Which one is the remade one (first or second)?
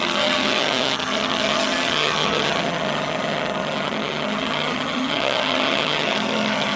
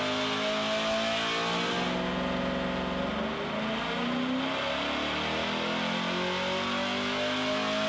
first